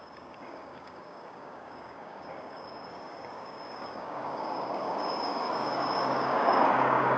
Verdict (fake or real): fake